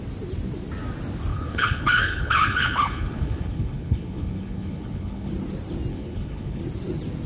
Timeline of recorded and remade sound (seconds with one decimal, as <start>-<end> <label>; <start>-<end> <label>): 0.0-1.3 recorded; 1.3-5.3 remade; 5.3-5.9 recorded; 5.9-6.6 remade; 6.6-7.3 recorded